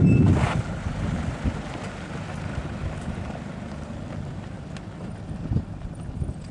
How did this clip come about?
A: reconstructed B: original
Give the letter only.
B